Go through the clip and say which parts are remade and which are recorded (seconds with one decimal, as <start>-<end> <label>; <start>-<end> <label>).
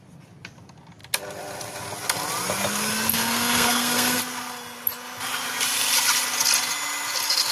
0.0-3.1 recorded; 3.1-4.2 remade; 4.2-7.5 recorded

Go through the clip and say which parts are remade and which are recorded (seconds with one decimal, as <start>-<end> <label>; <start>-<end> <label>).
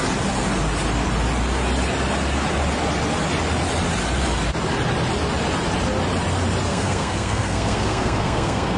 0.0-6.7 recorded; 6.7-8.8 remade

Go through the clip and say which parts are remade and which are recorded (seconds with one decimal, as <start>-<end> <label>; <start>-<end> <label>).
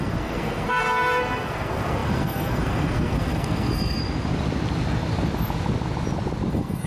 0.0-4.0 remade; 4.0-6.5 recorded; 6.5-6.9 remade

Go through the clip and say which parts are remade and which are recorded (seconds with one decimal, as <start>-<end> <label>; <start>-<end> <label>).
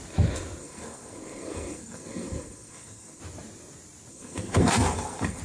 0.0-0.6 recorded; 0.6-3.2 remade; 3.2-4.1 recorded; 4.1-5.4 remade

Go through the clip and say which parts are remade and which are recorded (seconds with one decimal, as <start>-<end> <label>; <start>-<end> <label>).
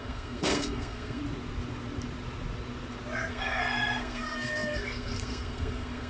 0.0-1.2 remade; 1.2-3.3 recorded; 3.3-6.1 remade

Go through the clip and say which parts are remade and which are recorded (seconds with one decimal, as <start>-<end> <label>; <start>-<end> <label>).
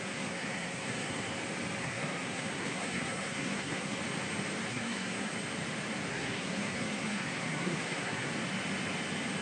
0.0-1.3 remade; 1.3-1.8 recorded; 1.8-4.0 remade; 4.0-4.7 recorded; 4.7-5.3 remade; 5.3-6.1 recorded; 6.1-8.3 remade; 8.3-9.4 recorded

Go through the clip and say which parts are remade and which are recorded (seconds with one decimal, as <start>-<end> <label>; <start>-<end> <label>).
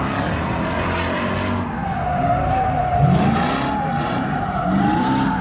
0.0-5.4 recorded